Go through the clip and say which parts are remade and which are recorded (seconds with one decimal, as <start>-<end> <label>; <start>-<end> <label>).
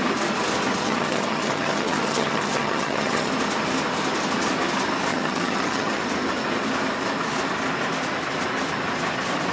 0.0-0.8 recorded; 0.8-3.3 remade; 3.3-5.1 recorded; 5.1-6.0 remade; 6.0-9.5 recorded